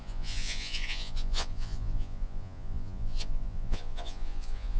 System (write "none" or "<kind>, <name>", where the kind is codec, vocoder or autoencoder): vocoder, Vocos